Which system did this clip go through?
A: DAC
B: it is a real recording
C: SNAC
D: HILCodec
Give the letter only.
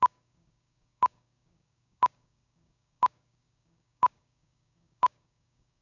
A